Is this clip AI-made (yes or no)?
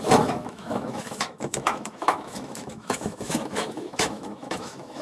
yes